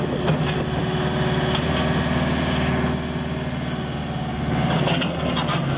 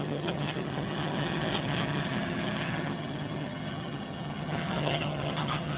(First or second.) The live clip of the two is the first